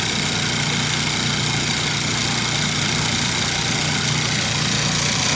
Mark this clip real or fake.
real